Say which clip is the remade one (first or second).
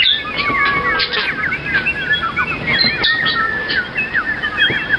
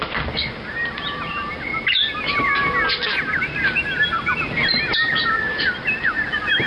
second